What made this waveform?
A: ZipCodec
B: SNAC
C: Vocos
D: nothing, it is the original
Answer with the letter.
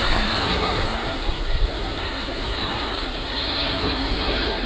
B